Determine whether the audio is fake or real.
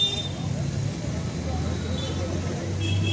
real